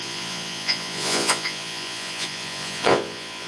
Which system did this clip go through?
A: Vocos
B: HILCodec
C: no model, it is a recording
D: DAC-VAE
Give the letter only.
A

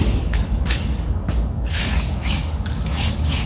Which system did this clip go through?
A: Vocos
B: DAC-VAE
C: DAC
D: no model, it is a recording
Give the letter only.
C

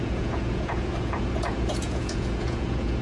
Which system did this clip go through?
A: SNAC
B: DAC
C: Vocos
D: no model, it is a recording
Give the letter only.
C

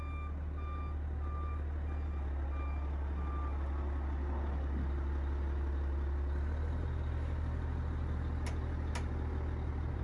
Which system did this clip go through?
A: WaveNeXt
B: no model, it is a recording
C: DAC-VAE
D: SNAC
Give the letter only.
B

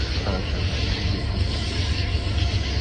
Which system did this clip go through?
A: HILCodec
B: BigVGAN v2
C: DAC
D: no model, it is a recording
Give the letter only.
C